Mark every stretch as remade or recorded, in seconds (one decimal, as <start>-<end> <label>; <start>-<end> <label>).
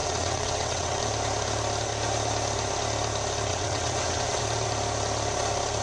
0.0-1.0 remade; 1.0-3.5 recorded; 3.5-4.4 remade; 4.4-5.8 recorded